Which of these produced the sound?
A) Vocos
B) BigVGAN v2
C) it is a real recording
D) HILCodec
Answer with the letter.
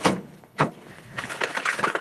D